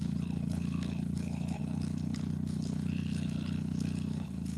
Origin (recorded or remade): remade